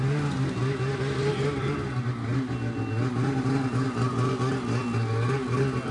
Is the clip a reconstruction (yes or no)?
no